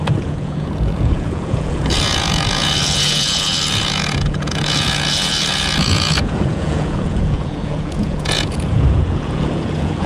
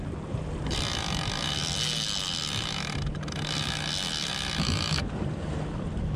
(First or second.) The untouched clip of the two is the second